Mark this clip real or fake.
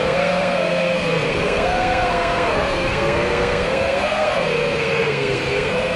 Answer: fake